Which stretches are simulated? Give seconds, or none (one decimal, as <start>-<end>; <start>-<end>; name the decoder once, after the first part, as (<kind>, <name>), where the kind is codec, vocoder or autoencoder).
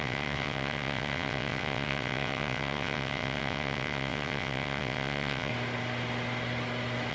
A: 0.0-5.5 (vocoder, WaveNeXt)